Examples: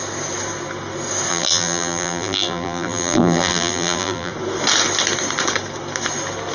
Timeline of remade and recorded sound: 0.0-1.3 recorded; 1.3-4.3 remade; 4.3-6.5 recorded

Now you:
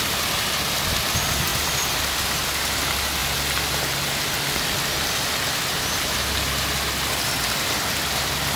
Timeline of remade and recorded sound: 0.0-1.5 recorded; 1.5-2.0 remade; 2.0-8.6 recorded

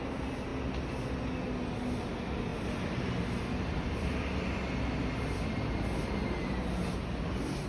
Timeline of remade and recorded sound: 0.0-7.7 recorded